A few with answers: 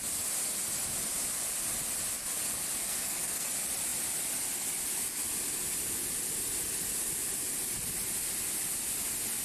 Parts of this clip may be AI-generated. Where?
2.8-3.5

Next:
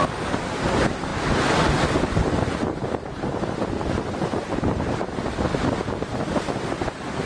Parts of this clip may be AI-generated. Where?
none